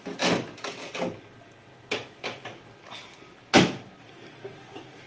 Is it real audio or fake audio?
real